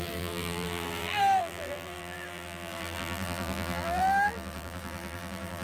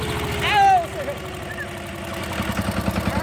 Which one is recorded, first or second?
second